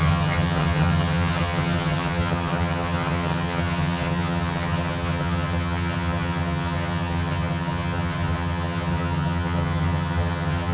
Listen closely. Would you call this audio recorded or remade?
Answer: remade